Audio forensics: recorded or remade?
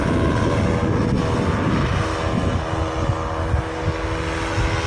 recorded